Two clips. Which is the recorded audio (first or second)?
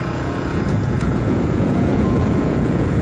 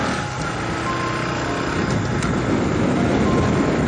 second